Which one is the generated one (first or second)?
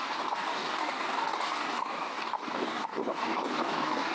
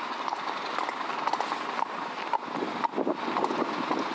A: first